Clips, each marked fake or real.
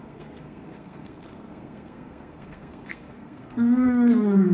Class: fake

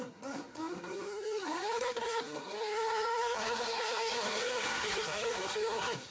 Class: fake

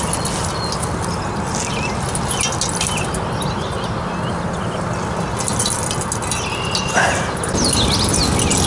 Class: real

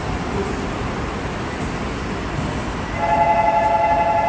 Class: real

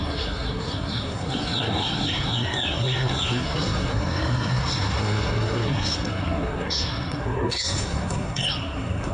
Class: fake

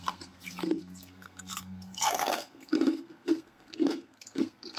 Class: fake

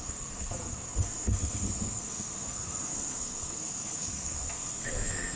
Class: fake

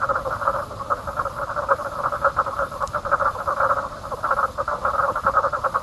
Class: real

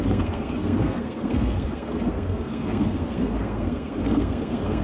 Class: fake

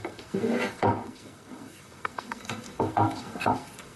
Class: fake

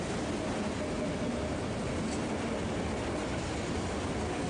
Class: real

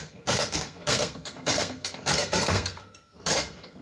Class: fake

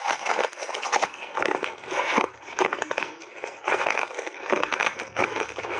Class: fake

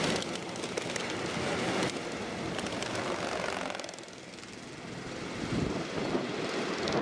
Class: real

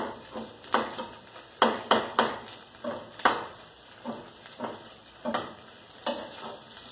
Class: real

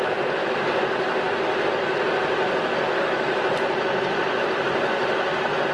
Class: real